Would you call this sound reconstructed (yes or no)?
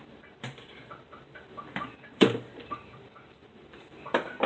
yes